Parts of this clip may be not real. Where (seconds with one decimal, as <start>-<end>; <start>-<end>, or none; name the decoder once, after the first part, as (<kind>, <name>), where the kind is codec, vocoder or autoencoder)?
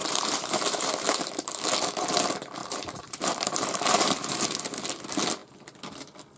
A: 0.0-1.2 (vocoder, BigVGAN v2); 2.6-4.4